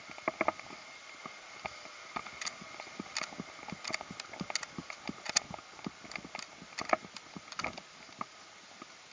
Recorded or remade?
recorded